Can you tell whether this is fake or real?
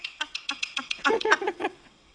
fake